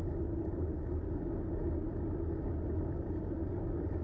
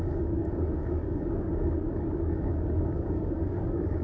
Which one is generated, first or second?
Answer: second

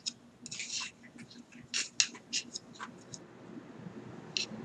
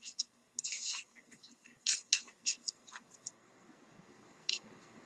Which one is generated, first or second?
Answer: second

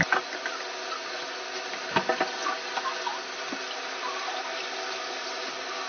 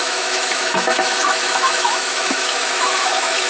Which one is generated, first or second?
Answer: second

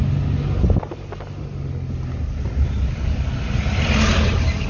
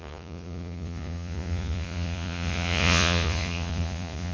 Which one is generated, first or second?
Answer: second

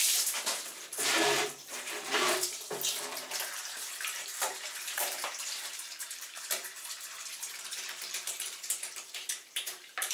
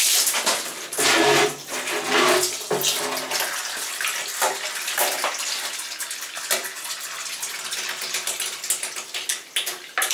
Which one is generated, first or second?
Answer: first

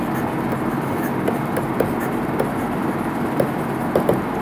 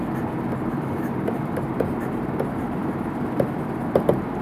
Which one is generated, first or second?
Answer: second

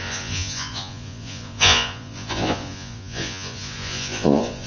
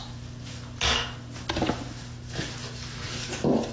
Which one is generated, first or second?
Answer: first